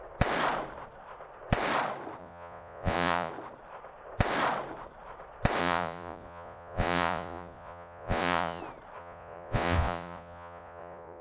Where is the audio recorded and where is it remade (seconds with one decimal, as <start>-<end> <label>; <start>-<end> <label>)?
0.0-2.2 recorded; 2.2-3.3 remade; 3.3-5.6 recorded; 5.6-8.6 remade; 8.6-9.0 recorded; 9.0-11.2 remade